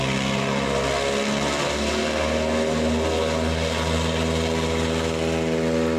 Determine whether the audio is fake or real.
real